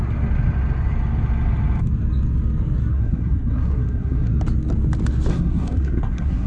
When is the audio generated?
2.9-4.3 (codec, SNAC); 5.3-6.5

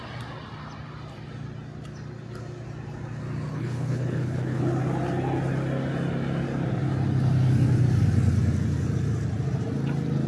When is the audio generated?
3.5-4.6 (codec, HILCodec)

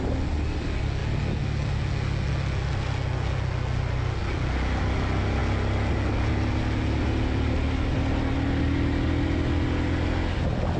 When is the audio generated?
none

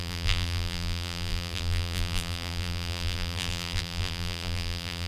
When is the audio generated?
0.0-5.1 (vocoder, BigVGAN v2)

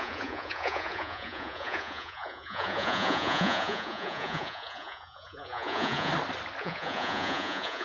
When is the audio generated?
0.0-6.1 (vocoder, Vocos); 6.6-7.8

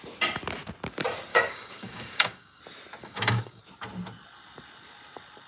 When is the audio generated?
1.3-2.6 (codec, DAC); 3.0-3.6

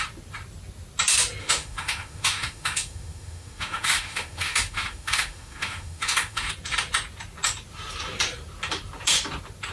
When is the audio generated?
1.4-6.5 (autoencoder, DAC-VAE)